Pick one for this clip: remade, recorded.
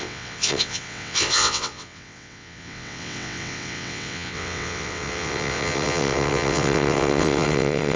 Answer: remade